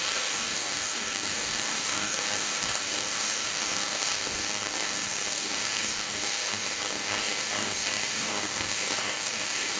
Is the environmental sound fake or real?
fake